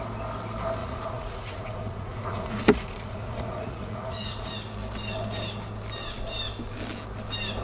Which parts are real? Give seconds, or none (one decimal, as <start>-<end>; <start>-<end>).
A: 0.0-0.8; 4.5-7.6